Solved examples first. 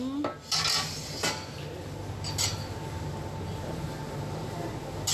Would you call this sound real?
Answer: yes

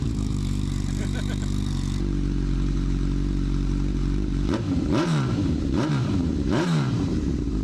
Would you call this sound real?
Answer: no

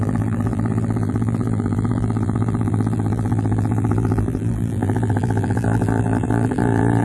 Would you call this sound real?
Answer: no